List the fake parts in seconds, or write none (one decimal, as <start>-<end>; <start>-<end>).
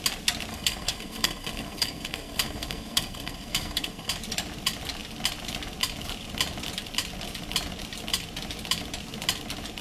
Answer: 0.5-4.1